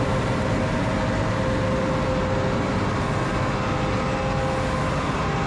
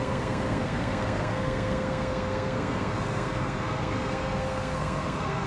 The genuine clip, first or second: first